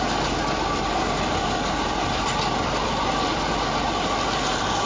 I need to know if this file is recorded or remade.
recorded